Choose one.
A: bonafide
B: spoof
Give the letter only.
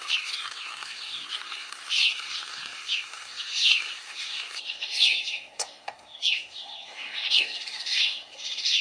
B